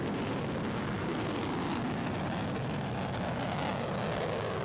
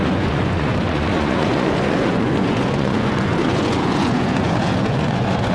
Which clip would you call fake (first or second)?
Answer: second